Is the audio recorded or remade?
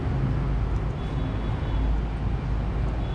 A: recorded